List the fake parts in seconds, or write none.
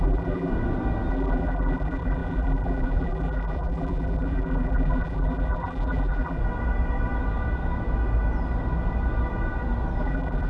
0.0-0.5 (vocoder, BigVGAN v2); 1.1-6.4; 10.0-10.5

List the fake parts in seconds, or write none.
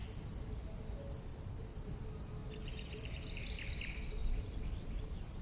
1.0-2.4 (vocoder, BigVGAN v2); 3.4-5.4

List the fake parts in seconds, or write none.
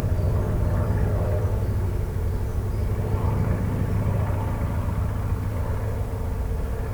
none